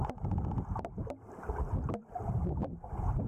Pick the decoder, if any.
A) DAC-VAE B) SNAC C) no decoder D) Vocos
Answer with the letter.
C